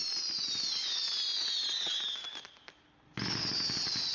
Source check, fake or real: real